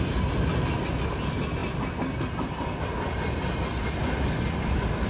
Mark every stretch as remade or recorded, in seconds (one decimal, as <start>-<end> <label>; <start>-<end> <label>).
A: 0.0-5.1 recorded